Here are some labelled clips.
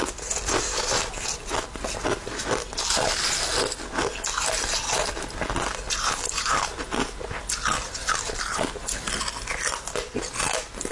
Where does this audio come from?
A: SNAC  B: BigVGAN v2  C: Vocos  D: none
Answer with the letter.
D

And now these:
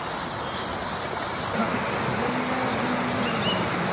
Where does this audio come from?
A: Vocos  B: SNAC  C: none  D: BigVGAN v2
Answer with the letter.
C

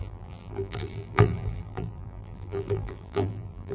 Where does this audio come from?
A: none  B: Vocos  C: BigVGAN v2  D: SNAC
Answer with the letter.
C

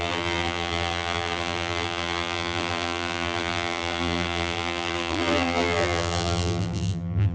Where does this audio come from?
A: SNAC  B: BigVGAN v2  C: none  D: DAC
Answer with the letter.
B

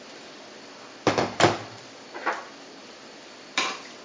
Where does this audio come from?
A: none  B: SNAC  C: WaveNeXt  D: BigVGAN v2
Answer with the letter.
D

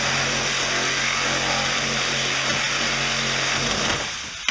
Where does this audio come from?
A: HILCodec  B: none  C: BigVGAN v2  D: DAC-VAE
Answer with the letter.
B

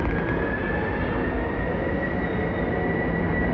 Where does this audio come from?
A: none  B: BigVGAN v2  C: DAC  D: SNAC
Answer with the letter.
A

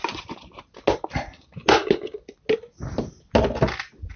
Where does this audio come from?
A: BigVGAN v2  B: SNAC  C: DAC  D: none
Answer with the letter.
D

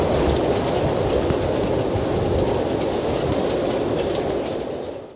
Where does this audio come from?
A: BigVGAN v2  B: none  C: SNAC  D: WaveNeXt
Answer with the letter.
B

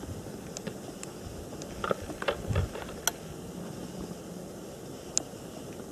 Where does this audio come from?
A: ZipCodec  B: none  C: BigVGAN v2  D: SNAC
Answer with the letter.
B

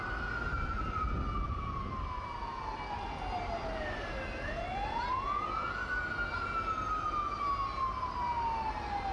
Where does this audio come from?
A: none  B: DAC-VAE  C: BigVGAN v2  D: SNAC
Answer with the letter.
A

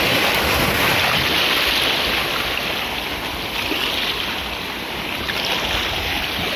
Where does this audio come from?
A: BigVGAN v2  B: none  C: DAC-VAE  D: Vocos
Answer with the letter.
B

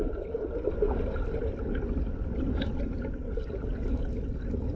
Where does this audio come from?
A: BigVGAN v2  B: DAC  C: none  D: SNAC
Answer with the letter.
C